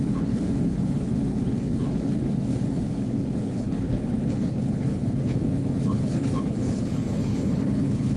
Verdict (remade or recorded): remade